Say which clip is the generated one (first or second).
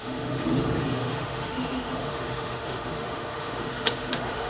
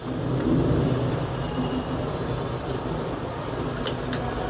first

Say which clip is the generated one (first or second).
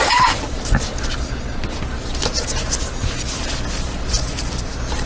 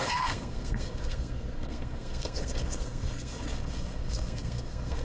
second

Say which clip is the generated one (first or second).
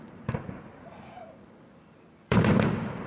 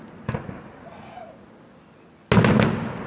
first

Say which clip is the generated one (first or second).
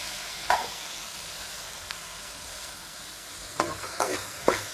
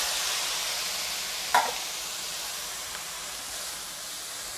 first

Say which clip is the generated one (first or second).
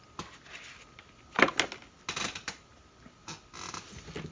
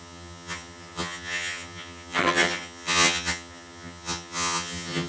second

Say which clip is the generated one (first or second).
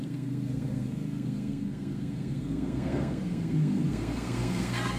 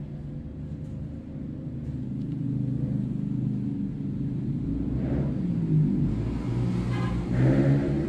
first